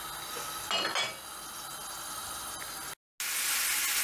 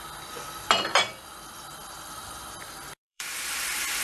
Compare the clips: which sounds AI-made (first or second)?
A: second